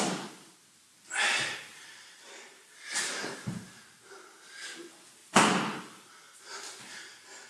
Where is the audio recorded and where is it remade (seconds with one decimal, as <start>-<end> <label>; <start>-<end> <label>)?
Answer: 0.0-1.7 recorded; 1.7-4.3 remade; 4.3-7.5 recorded